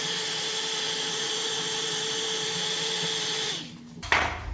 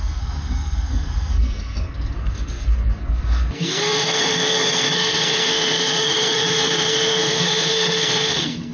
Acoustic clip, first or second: first